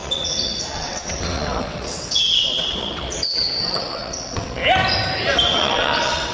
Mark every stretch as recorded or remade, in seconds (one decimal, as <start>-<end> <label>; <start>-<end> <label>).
0.0-4.6 remade; 4.6-5.5 recorded; 5.5-6.3 remade